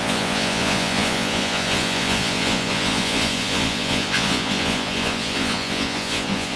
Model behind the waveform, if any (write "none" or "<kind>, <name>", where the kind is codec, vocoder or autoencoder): vocoder, Vocos